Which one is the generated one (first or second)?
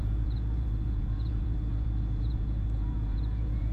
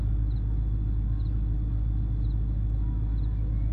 first